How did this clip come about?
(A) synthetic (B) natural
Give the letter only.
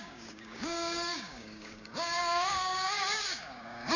A